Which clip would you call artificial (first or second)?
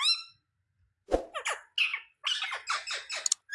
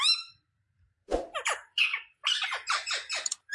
second